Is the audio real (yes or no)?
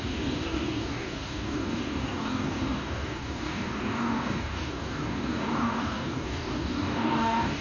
no